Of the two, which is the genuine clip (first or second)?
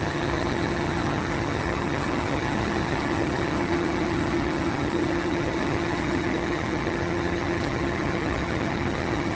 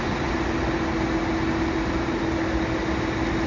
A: second